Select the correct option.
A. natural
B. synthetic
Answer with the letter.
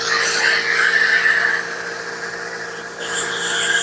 A